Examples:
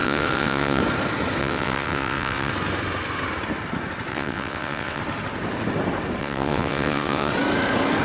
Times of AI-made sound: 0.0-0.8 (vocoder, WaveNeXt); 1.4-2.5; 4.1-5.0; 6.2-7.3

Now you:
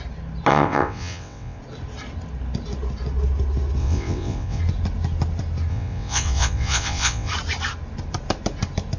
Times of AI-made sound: 0.5-1.6 (vocoder, WaveNeXt); 3.8-4.6; 5.7-7.3

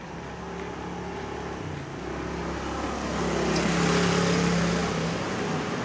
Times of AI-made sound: none